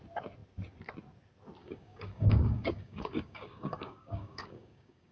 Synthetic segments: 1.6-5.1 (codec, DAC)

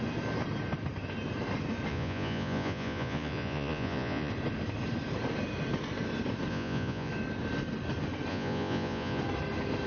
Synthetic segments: 1.9-4.3 (vocoder, Vocos); 6.5-7.1; 8.3-9.2

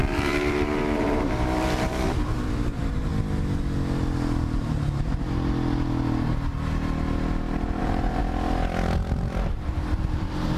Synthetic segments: 0.0-3.1 (vocoder, BigVGAN v2); 7.8-8.2; 9.5-10.6

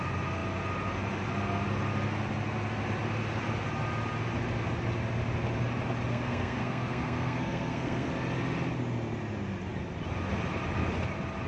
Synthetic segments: 6.1-8.1 (codec, SNAC)